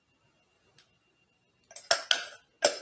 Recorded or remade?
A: recorded